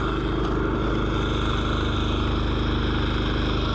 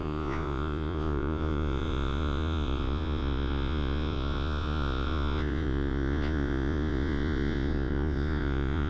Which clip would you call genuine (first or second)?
first